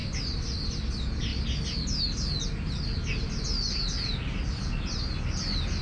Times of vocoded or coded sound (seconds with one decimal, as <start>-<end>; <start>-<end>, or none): none